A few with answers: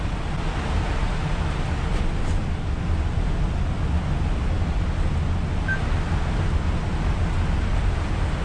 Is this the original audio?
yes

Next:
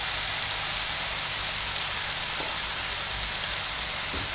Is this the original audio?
yes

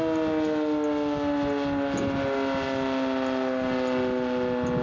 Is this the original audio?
yes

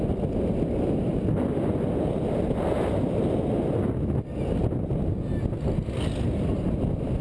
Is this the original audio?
yes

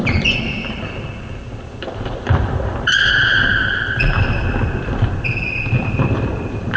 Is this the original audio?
no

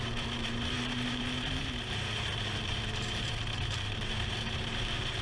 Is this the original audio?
no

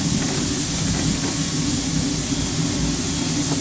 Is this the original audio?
yes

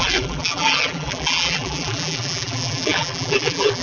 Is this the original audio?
no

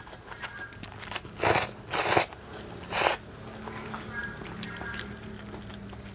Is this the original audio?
no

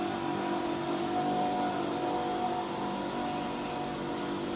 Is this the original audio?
yes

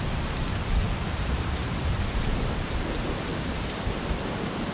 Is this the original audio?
no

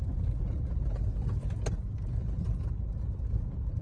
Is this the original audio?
yes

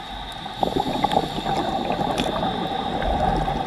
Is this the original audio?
yes